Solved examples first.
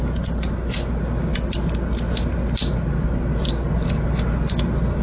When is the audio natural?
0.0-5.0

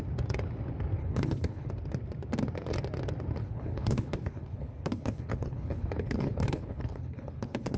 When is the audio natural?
0.0-1.0; 1.7-3.4

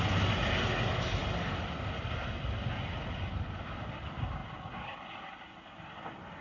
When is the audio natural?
0.0-6.4

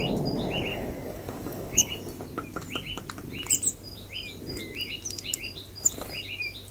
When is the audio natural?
0.0-0.7; 1.9-6.7

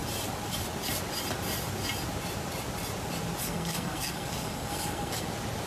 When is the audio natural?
0.0-3.4; 5.3-5.7

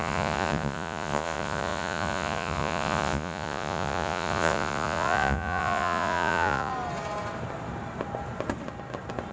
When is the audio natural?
6.7-9.3